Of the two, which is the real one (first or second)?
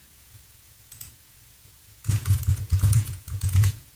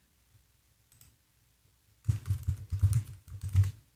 second